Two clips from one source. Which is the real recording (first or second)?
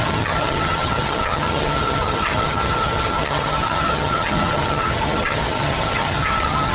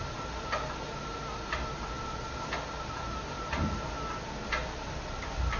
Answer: second